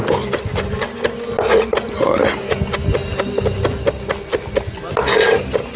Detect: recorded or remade recorded